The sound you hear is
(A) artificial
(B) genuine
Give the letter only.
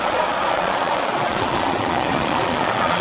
A